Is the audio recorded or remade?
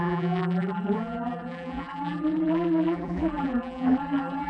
remade